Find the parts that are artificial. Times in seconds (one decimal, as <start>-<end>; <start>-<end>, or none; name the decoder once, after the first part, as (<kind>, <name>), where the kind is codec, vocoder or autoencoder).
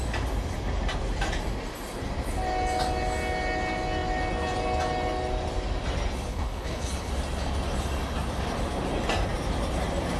6.3-7.1 (codec, HILCodec)